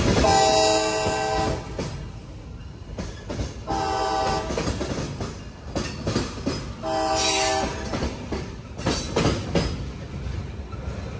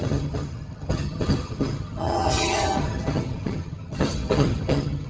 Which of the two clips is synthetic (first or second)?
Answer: second